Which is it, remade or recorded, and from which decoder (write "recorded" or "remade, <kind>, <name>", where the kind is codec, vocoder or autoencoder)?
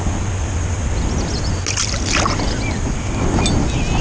recorded